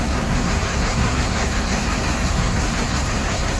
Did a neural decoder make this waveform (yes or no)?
yes